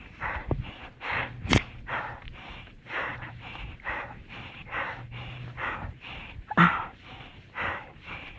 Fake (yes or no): yes